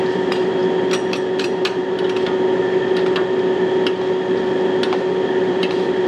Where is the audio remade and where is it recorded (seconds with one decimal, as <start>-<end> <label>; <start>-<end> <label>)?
0.0-0.6 remade; 0.6-1.4 recorded; 1.4-1.8 remade; 1.8-5.5 recorded; 5.5-6.1 remade